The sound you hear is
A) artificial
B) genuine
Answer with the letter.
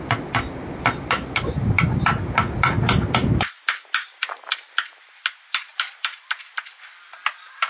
B